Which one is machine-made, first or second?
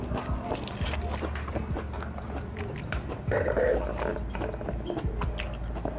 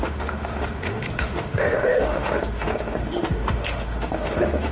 second